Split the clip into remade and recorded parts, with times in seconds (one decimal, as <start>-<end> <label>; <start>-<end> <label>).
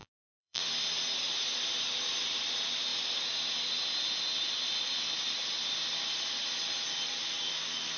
0.0-0.6 remade; 0.6-8.0 recorded